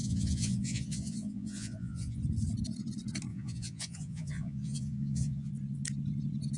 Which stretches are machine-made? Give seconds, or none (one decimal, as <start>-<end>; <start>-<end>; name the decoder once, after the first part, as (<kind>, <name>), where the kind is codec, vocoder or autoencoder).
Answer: 0.0-2.2 (vocoder, Vocos); 3.3-5.5